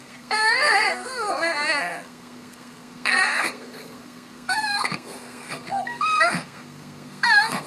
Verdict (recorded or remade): remade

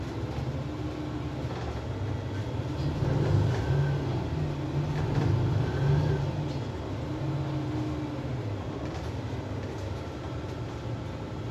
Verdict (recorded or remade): recorded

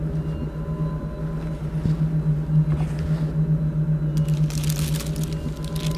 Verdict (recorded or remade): recorded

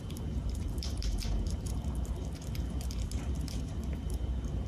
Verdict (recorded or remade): remade